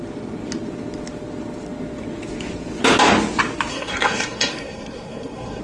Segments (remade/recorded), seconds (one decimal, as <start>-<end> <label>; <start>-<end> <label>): 0.0-3.7 recorded; 3.7-5.6 remade